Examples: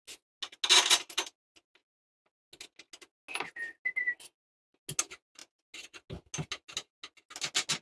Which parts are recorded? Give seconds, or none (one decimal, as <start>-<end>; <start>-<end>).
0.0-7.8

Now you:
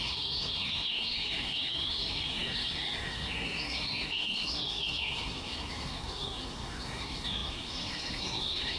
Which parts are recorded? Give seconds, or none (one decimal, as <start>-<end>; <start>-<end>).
none

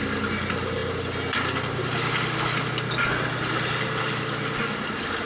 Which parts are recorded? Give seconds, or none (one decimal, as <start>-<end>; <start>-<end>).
0.0-5.3